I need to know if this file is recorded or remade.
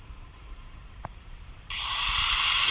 remade